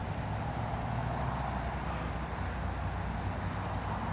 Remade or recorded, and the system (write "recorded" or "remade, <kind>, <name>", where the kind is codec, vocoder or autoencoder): remade, vocoder, BigVGAN v2